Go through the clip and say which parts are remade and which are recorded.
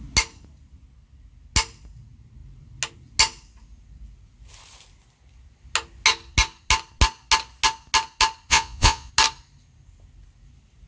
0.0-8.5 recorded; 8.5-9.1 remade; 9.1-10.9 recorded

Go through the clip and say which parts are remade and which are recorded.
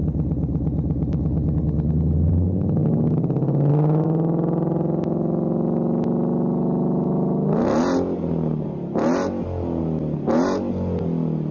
0.0-11.5 recorded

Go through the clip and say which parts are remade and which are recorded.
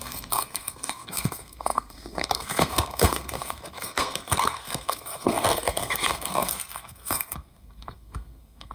0.0-8.7 remade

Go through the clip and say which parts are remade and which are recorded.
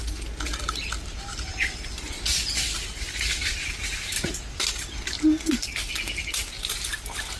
0.0-7.4 recorded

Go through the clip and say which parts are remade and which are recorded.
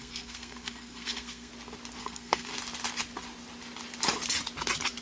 0.0-1.5 remade; 1.5-2.0 recorded; 2.0-2.5 remade; 2.5-5.0 recorded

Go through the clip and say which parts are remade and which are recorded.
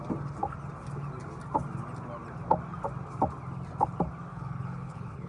0.0-4.3 recorded; 4.3-5.3 remade